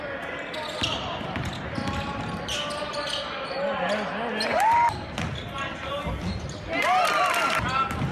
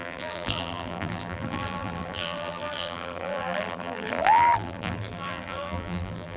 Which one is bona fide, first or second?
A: first